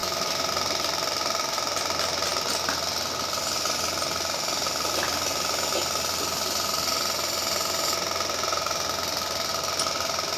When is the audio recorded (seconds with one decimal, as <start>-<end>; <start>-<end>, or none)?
0.5-10.4